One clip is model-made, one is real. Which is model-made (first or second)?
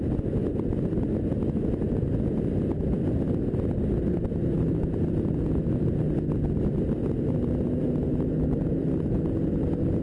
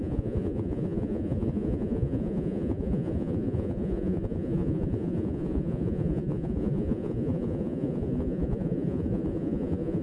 second